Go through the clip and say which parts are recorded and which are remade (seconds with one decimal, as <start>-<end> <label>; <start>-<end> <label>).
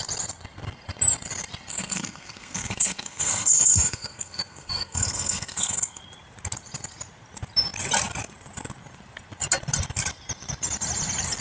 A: 0.0-1.7 recorded; 1.7-6.0 remade; 6.0-11.4 recorded